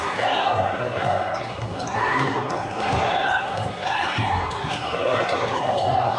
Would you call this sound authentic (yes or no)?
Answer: no